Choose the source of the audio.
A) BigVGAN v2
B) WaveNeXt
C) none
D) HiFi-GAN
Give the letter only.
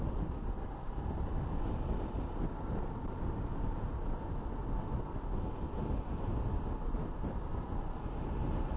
C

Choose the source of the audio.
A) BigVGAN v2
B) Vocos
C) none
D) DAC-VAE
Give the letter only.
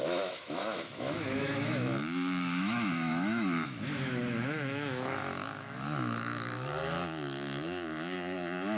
D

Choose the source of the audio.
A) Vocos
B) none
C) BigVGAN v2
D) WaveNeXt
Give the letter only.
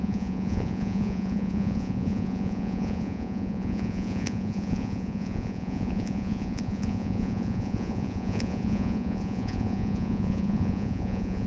A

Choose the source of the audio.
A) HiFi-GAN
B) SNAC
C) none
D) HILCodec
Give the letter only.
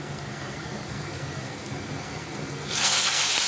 B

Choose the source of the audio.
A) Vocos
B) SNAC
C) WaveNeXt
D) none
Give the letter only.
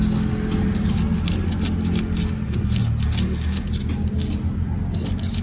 D